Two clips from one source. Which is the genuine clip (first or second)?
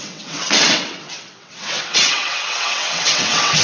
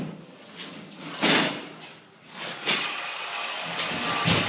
second